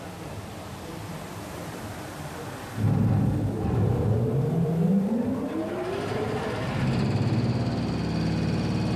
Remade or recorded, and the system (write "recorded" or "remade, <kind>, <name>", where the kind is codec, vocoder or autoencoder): recorded